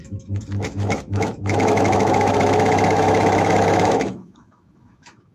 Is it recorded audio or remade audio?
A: remade